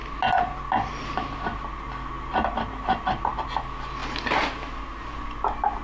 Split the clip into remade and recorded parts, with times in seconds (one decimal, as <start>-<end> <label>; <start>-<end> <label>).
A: 0.0-5.8 recorded